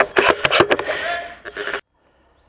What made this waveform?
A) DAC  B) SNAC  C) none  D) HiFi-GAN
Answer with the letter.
C